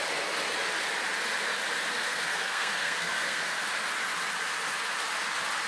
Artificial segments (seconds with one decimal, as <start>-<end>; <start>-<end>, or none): 1.9-3.4

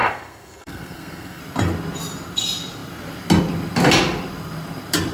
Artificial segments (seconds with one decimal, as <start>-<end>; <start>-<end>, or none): 0.0-1.4

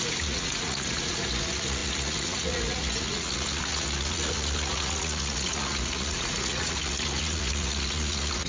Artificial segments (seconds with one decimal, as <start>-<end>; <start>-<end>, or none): 0.0-8.5

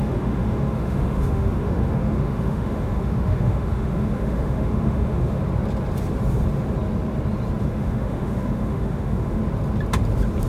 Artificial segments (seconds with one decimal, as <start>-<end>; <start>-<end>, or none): 0.0-5.4; 7.6-9.4

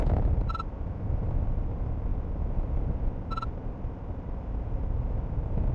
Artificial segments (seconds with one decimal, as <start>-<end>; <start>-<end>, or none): none

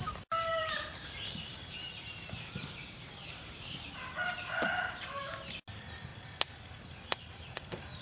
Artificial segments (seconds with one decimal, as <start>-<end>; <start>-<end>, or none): 0.5-3.9